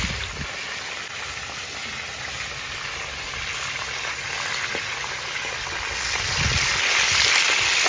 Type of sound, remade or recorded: recorded